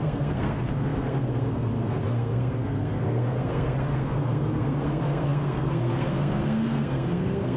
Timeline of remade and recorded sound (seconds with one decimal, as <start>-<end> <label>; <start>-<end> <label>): 0.0-7.6 remade